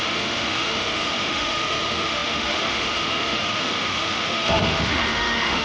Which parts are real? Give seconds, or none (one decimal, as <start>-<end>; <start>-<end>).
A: none